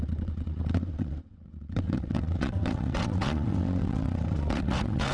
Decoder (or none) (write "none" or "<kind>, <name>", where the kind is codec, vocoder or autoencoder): vocoder, WaveNeXt